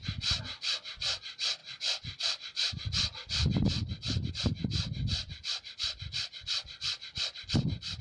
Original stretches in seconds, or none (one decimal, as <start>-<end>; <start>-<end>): 0.0-1.6; 4.3-5.2